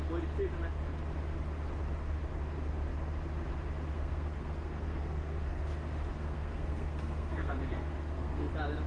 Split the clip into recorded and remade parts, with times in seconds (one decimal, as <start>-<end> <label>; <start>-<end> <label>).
0.0-3.9 recorded; 3.9-5.6 remade; 5.6-6.1 recorded; 6.1-8.5 remade; 8.5-8.9 recorded